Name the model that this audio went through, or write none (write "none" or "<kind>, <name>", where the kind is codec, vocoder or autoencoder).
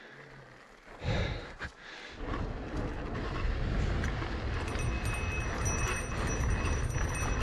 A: none